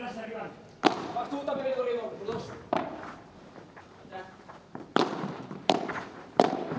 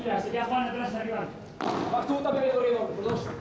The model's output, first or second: first